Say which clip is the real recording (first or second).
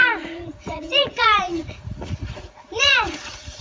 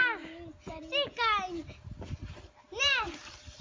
second